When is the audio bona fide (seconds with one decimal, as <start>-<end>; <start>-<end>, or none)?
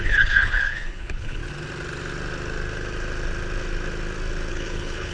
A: 1.4-4.5